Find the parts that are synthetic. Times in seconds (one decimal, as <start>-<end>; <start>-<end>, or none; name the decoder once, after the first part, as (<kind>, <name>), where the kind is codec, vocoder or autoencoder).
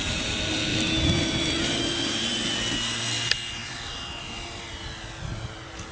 0.7-1.8 (vocoder, BigVGAN v2); 3.6-4.7